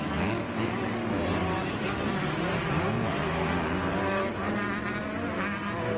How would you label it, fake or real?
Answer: real